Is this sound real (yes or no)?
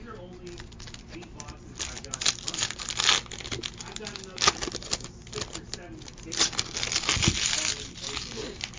yes